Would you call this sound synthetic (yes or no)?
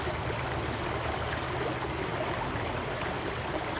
no